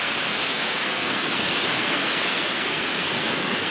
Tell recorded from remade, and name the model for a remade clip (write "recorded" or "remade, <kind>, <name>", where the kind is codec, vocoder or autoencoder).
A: remade, codec, SNAC